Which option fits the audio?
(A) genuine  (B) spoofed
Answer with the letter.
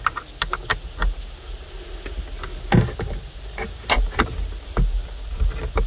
A